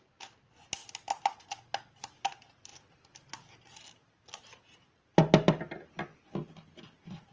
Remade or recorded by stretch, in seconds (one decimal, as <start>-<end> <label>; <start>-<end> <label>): 0.0-7.3 recorded